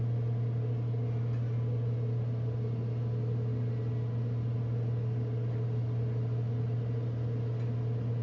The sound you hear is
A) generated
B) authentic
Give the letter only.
B